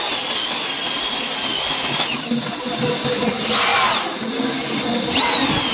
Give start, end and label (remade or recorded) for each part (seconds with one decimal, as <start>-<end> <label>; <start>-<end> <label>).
0.0-5.7 recorded